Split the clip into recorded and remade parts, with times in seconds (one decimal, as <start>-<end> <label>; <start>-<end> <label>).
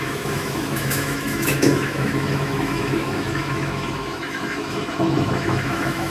0.0-6.1 remade